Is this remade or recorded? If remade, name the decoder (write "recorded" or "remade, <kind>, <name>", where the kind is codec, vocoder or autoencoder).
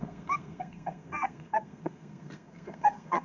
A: remade, codec, SNAC